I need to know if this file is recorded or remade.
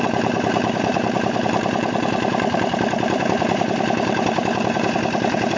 remade